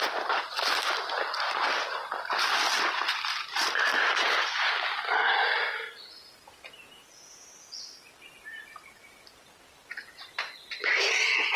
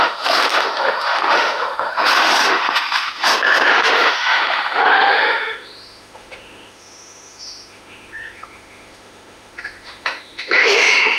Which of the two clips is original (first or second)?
first